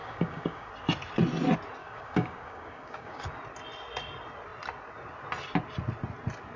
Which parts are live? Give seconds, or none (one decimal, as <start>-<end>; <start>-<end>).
0.7-1.8; 3.2-6.6